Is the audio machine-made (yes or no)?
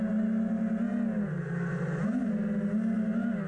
no